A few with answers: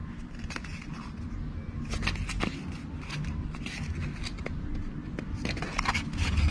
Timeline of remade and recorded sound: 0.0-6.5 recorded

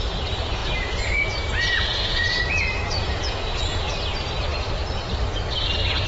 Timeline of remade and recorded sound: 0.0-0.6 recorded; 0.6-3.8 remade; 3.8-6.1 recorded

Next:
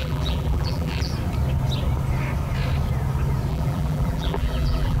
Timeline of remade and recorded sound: 0.0-1.1 remade; 1.1-3.5 recorded; 3.5-5.0 remade

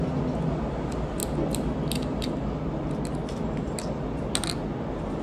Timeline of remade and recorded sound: 0.0-5.2 recorded

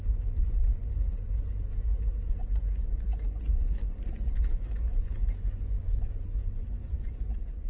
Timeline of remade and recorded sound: 0.0-7.7 remade

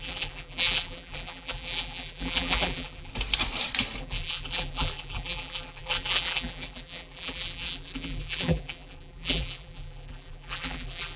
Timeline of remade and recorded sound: 0.0-3.1 remade; 3.1-4.0 recorded; 4.0-11.2 remade

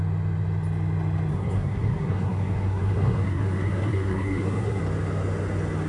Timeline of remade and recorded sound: 0.0-1.3 recorded; 1.3-4.8 remade; 4.8-5.9 recorded

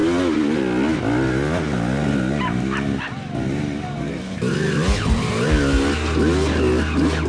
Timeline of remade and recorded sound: 0.0-7.3 recorded